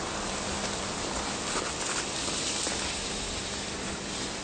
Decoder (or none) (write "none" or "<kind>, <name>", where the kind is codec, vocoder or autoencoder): none